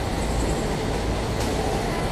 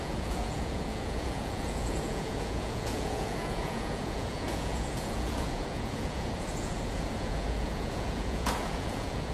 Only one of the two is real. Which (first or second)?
first